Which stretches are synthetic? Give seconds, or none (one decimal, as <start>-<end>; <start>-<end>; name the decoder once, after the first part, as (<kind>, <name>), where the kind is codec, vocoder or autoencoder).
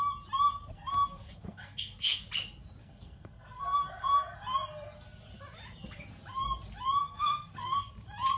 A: 0.5-2.3 (codec, SNAC); 2.8-4.4; 7.0-7.9